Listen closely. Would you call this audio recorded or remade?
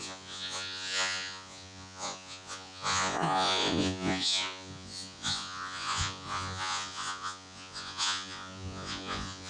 remade